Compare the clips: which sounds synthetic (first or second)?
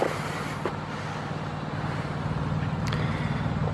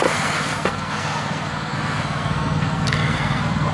second